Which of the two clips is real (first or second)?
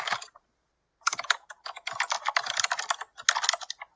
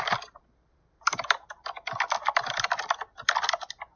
first